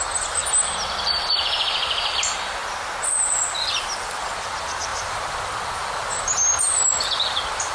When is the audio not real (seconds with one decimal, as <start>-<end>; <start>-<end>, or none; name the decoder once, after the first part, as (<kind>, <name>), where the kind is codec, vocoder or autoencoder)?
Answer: 0.0-0.4 (vocoder, BigVGAN v2); 1.1-2.6; 3.5-7.7